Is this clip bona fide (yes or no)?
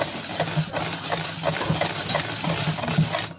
yes